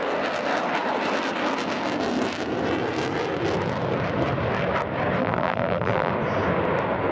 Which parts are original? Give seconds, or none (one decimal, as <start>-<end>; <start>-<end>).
0.0-5.2; 6.1-7.1